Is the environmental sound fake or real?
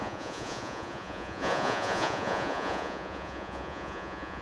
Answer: fake